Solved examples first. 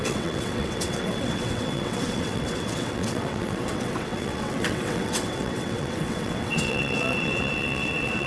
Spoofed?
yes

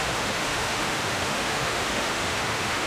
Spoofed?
yes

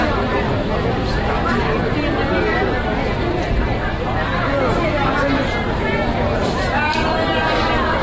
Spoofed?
no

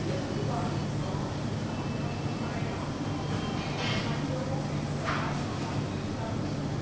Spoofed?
no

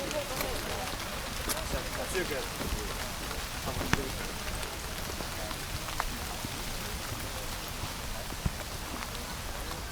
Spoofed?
no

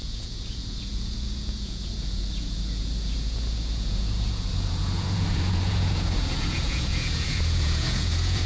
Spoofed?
yes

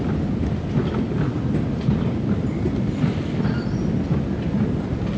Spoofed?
no